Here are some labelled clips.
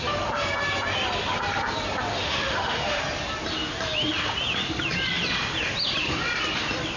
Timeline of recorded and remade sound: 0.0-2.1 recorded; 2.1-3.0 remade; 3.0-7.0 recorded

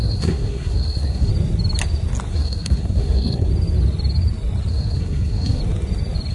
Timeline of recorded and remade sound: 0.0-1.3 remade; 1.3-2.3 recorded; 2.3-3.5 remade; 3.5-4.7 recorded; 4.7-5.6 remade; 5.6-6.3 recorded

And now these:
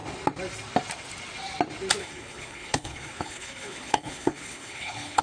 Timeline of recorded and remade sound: 0.0-2.0 recorded; 2.0-5.2 remade

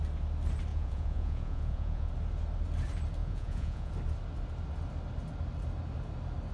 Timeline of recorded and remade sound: 0.0-0.7 recorded; 0.7-2.1 remade; 2.1-3.2 recorded; 3.2-3.9 remade; 3.9-6.5 recorded

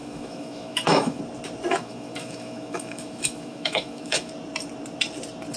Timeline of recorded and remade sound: 0.0-1.2 remade; 1.2-1.7 recorded; 1.7-4.3 remade; 4.3-5.6 recorded

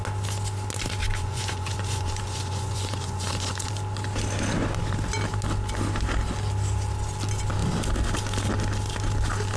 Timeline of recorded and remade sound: 0.0-1.0 recorded; 1.0-3.7 remade; 3.7-9.6 recorded

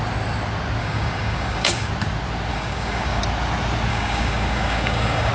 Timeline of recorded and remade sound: 0.0-0.8 recorded; 0.8-1.9 remade; 1.9-2.5 recorded; 2.5-3.2 remade; 3.2-3.9 recorded; 3.9-5.3 remade

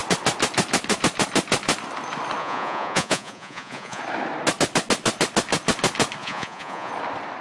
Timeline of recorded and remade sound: 0.0-2.4 recorded; 2.4-4.0 remade; 4.0-6.2 recorded; 6.2-6.9 remade; 6.9-7.4 recorded